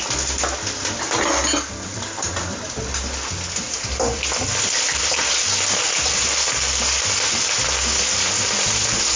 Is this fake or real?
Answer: real